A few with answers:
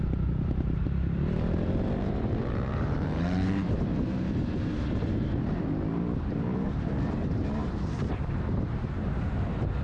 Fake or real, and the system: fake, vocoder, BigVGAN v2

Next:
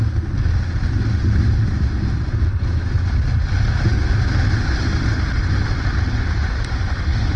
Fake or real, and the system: real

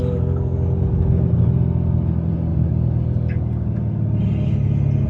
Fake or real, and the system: real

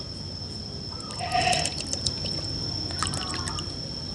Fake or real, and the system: real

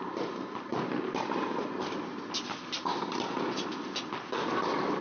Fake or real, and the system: real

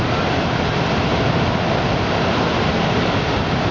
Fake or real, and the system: real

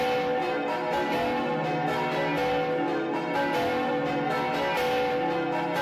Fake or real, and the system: real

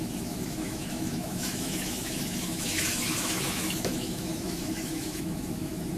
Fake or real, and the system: fake, autoencoder, DAC-VAE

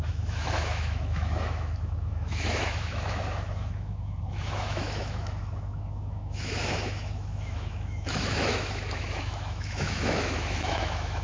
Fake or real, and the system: fake, autoencoder, DAC-VAE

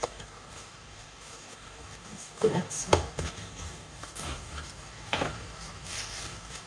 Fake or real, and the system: fake, codec, DAC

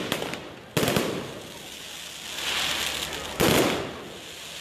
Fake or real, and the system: real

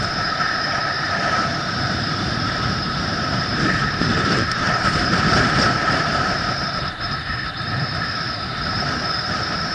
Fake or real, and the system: fake, vocoder, BigVGAN v2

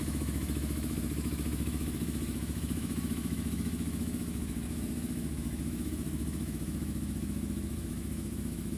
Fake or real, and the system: fake, autoencoder, DAC-VAE